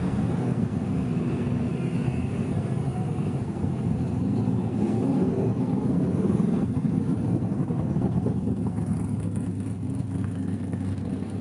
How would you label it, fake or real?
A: fake